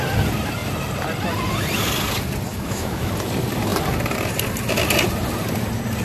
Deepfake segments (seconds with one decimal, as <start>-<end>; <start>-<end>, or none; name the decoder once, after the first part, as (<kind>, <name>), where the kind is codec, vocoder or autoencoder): 2.5-3.1 (autoencoder, DAC-VAE)